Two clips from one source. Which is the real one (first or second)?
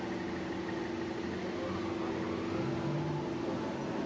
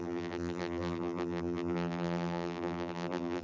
first